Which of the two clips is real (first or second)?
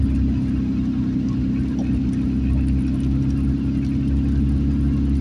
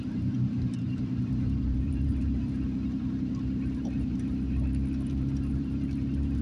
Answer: first